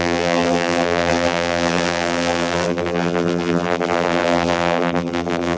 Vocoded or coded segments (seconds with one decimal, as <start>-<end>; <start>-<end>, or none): 0.0-5.6